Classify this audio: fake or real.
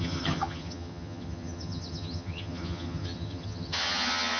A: fake